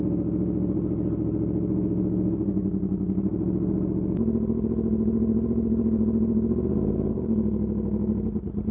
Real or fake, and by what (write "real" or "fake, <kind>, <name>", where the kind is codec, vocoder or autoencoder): real